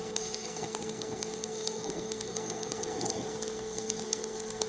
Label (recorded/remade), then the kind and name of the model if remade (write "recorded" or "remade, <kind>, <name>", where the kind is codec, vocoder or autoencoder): remade, codec, SNAC